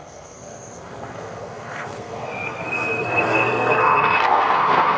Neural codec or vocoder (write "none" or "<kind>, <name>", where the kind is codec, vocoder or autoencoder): codec, SNAC